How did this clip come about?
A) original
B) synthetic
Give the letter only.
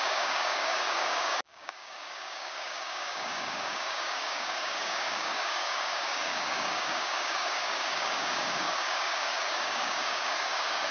B